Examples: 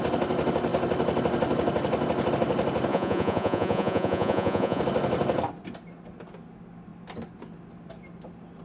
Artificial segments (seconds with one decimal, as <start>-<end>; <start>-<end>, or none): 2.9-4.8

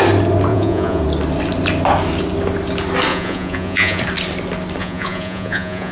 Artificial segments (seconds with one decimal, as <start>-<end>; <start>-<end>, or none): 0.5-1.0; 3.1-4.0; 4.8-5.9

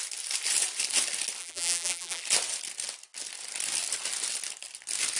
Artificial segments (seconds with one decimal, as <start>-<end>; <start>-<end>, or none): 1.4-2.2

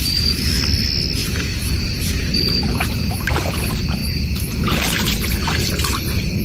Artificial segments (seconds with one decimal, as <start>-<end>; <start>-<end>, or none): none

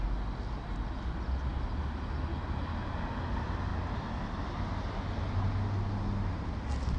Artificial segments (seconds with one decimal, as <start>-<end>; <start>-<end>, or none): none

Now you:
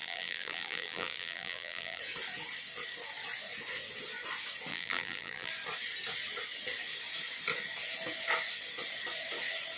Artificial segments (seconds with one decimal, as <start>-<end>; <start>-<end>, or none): 0.0-2.0; 4.7-5.5

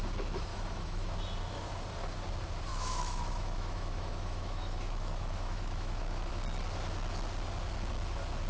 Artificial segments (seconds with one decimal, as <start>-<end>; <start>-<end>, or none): 0.5-1.1; 2.7-6.3